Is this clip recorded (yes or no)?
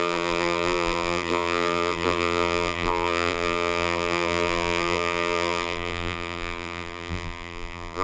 no